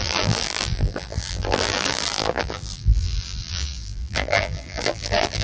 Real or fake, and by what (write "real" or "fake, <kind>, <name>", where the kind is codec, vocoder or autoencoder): fake, vocoder, BigVGAN v2